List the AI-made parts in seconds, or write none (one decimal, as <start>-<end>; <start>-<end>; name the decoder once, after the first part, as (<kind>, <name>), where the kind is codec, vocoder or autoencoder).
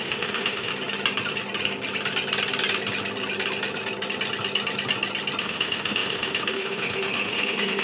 0.0-0.7 (autoencoder, DAC-VAE); 5.4-7.8